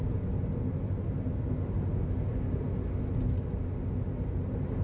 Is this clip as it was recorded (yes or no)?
yes